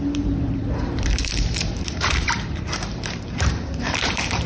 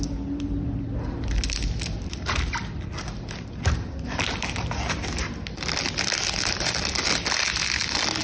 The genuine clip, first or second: second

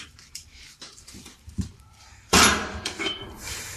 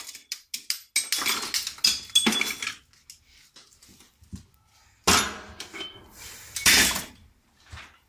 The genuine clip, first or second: second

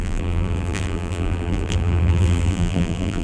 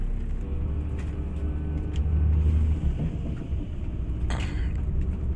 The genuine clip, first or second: second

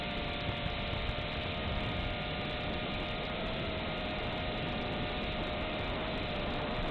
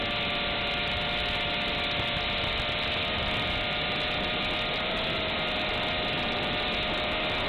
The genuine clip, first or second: second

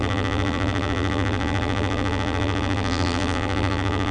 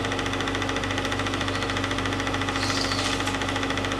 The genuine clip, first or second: second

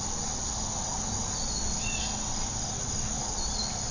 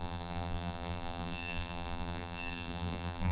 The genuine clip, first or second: first